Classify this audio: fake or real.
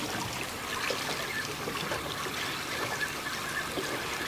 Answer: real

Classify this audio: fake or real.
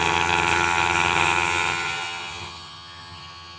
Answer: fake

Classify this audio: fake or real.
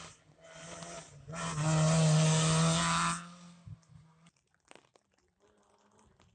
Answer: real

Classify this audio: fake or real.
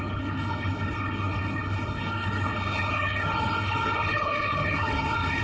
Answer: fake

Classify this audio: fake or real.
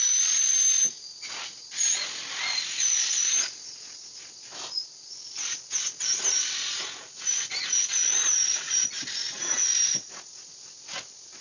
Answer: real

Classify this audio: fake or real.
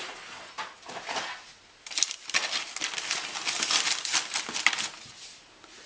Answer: real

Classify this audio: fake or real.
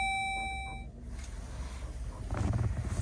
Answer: real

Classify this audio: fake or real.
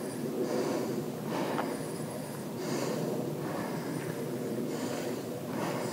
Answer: real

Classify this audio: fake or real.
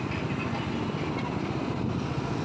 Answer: real